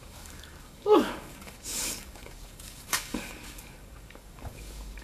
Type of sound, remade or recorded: remade